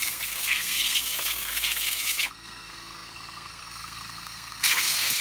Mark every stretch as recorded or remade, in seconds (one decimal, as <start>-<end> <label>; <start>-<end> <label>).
0.0-5.2 remade